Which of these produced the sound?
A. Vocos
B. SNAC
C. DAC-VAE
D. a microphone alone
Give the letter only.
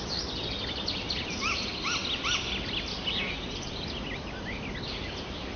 D